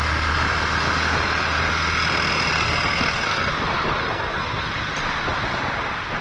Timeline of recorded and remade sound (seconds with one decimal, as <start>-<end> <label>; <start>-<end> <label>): 0.0-2.5 recorded; 2.5-3.5 remade; 3.5-4.0 recorded; 4.0-4.7 remade; 4.7-6.2 recorded